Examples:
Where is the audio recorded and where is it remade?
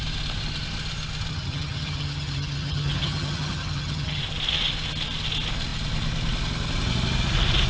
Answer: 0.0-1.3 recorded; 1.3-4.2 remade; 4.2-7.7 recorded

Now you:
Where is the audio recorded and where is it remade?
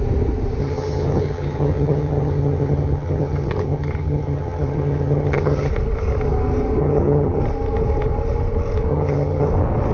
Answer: 0.0-0.6 recorded; 0.6-5.7 remade; 5.7-6.8 recorded; 6.8-7.4 remade; 7.4-8.9 recorded; 8.9-9.5 remade; 9.5-9.9 recorded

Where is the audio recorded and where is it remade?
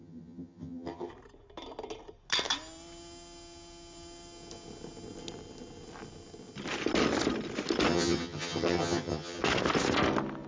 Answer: 0.0-1.1 remade; 1.1-7.9 recorded; 7.9-9.4 remade; 9.4-10.5 recorded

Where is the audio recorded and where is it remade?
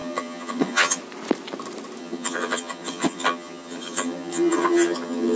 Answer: 0.0-1.0 remade; 1.0-2.0 recorded; 2.0-5.4 remade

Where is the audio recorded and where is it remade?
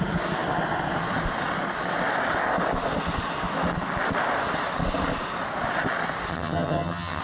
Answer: 0.0-6.3 recorded; 6.3-7.2 remade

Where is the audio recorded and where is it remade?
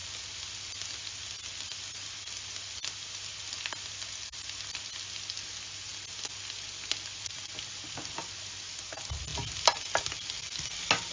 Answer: 0.0-11.1 recorded